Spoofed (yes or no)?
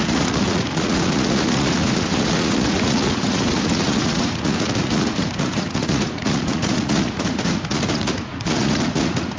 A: yes